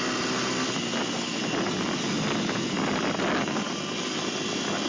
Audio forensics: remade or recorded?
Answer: recorded